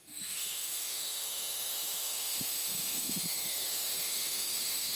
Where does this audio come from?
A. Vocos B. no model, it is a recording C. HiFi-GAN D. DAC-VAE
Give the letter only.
D